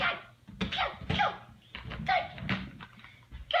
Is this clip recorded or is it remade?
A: recorded